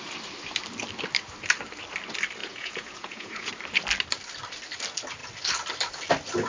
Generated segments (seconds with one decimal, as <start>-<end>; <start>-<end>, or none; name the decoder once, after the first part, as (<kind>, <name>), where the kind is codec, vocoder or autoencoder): 2.4-3.5 (vocoder, Vocos)